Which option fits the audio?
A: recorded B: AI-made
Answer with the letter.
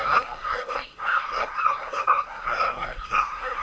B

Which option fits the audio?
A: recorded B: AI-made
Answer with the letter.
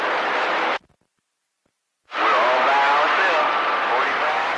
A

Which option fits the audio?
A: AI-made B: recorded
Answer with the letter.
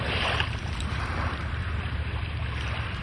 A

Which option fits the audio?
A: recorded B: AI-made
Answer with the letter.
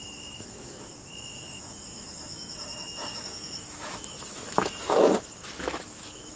B